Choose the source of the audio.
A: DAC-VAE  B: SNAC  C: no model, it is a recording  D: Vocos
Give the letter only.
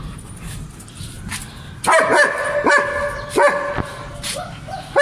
C